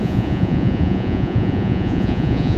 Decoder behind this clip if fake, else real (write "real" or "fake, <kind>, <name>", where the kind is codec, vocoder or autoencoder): fake, vocoder, Vocos